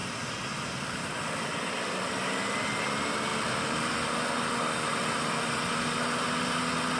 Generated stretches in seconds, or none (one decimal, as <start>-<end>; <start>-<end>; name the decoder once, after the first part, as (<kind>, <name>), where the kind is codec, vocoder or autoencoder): none